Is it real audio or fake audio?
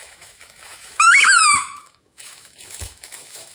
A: fake